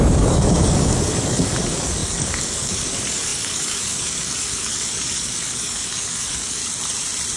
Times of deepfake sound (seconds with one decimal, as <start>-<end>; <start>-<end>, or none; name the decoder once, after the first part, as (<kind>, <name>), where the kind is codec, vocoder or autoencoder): 0.0-6.6 (codec, DAC)